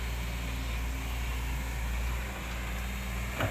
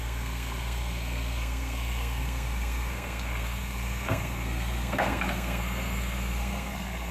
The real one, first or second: first